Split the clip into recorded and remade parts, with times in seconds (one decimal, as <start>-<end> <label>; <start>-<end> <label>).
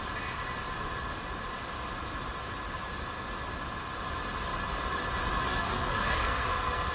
0.0-5.5 recorded; 5.5-6.9 remade